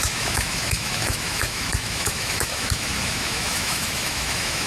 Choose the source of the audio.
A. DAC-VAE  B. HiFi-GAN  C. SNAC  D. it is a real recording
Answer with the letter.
A